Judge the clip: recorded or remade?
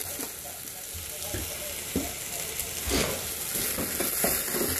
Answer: recorded